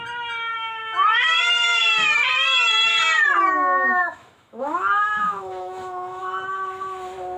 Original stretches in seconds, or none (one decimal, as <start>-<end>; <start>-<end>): 0.0-4.0; 6.2-7.4